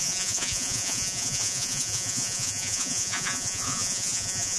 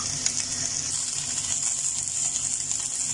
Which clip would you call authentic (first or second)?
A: second